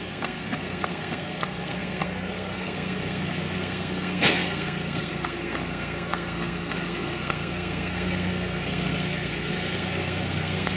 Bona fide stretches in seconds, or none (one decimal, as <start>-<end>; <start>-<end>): none